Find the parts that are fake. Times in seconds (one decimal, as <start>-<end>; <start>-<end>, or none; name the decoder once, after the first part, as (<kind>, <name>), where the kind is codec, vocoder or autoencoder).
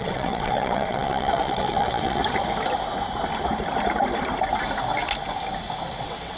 0.0-2.2 (vocoder, WaveNeXt); 6.0-6.4